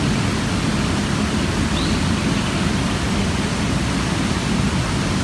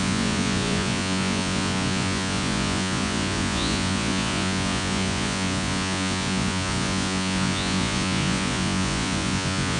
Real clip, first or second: first